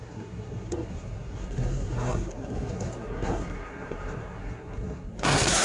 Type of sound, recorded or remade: remade